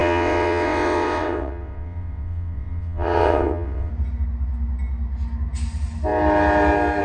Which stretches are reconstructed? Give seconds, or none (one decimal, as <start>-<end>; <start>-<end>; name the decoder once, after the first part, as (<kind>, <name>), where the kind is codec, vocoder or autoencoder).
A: 0.0-3.9 (vocoder, WaveNeXt)